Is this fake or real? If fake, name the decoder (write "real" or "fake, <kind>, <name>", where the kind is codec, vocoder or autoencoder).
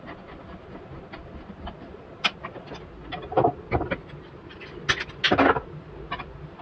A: real